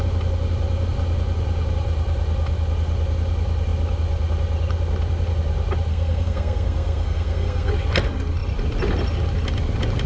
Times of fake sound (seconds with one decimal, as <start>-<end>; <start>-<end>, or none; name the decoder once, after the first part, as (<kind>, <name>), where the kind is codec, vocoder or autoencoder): 5.9-7.7 (codec, SNAC)